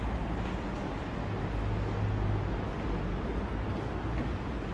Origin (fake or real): real